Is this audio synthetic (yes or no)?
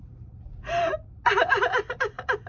no